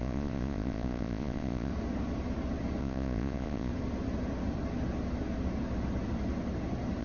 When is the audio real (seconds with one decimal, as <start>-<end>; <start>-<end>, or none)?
1.7-2.8; 3.7-7.0